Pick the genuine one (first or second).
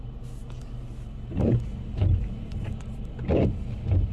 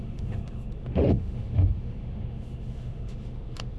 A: first